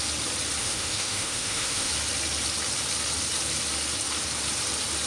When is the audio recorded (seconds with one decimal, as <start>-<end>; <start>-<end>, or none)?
0.0-0.6; 1.9-5.1